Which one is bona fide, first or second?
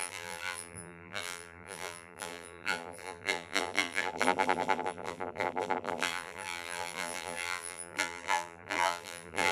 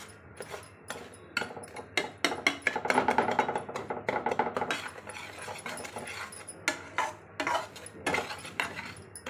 second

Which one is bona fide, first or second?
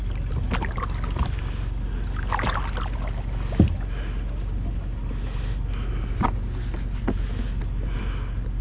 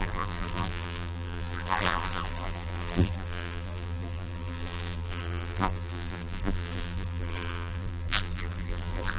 first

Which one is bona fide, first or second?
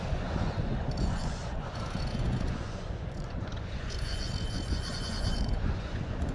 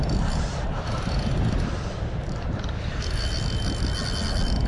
second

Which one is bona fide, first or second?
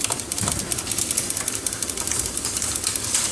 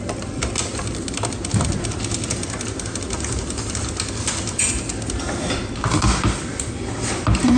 second